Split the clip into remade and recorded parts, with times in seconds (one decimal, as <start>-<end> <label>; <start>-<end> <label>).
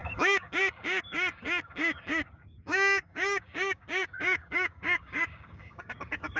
0.0-6.4 remade